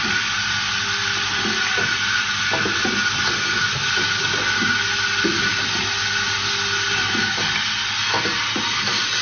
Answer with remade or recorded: recorded